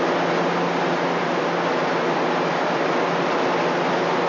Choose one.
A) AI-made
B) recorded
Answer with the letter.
B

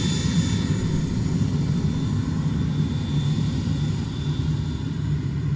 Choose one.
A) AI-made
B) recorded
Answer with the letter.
B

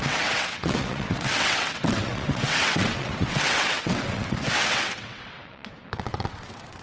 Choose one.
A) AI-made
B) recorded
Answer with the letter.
A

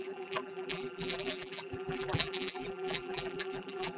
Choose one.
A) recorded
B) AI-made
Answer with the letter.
B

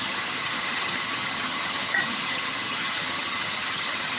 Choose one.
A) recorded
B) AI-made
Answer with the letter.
B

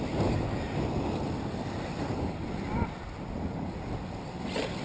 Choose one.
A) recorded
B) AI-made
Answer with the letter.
A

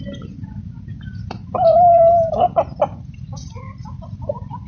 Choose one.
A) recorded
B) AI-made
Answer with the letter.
A